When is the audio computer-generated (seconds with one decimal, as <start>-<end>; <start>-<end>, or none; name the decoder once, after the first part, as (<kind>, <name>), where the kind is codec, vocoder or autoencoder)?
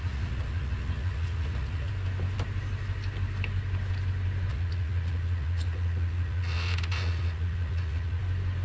0.0-1.9 (vocoder, Vocos); 4.5-8.2